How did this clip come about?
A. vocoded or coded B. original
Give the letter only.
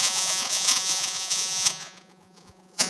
A